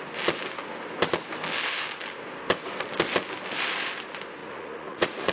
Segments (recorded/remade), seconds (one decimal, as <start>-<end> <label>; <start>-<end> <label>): 0.0-4.4 recorded; 4.4-5.3 remade